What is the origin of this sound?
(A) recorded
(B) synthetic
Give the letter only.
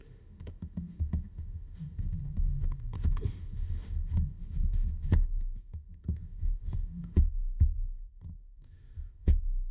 B